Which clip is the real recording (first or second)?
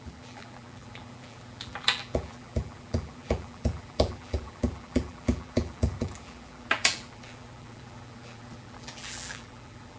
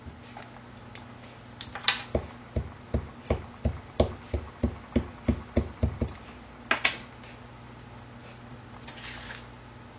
second